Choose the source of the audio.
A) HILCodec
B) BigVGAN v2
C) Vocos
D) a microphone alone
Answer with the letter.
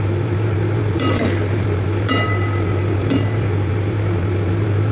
B